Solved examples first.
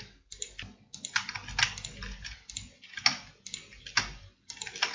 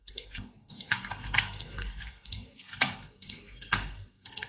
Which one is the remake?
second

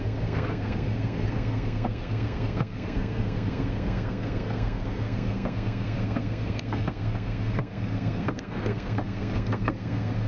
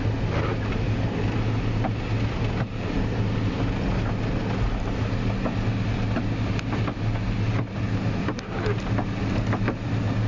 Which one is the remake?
first